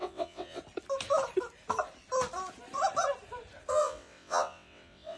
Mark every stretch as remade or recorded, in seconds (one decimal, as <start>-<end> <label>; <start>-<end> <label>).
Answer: 0.0-0.6 remade; 0.6-3.7 recorded; 3.7-5.2 remade